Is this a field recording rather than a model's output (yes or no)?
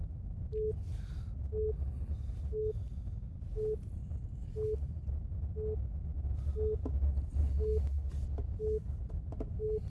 yes